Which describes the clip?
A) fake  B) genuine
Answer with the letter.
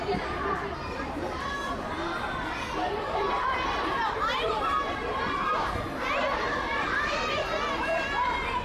A